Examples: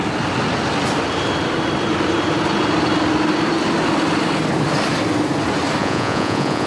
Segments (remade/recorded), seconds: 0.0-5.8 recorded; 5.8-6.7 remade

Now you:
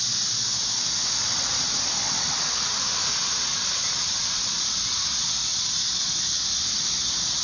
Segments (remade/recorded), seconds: 0.0-1.2 recorded; 1.2-2.5 remade; 2.5-3.5 recorded; 3.5-5.0 remade; 5.0-5.5 recorded; 5.5-6.4 remade; 6.4-7.4 recorded

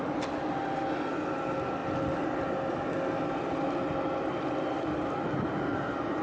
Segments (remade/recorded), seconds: 0.0-6.2 recorded